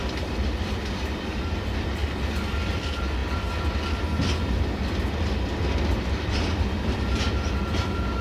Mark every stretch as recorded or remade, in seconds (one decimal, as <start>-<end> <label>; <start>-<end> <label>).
0.0-8.2 recorded